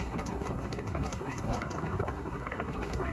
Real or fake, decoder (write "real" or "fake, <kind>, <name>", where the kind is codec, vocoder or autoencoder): fake, codec, SNAC